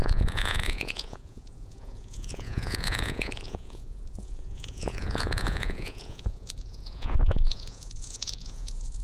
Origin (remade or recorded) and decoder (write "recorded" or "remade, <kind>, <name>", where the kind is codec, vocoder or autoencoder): remade, vocoder, Vocos